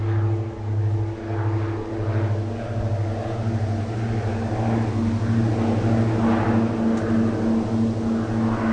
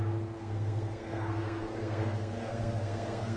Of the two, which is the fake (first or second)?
second